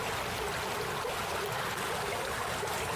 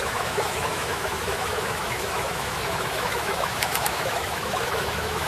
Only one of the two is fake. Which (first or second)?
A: second